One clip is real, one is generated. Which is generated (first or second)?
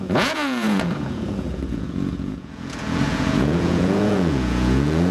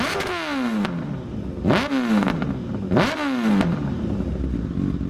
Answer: first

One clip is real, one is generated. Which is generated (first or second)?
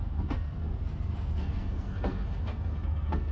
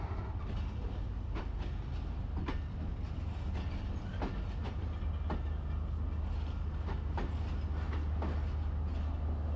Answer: first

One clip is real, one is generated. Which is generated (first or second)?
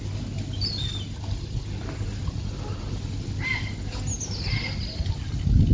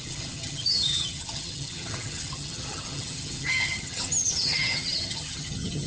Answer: second